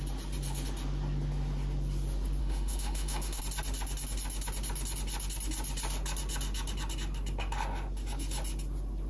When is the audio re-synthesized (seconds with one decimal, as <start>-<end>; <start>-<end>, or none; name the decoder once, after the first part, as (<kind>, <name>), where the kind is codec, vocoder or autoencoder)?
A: 2.4-3.4 (autoencoder, DAC-VAE)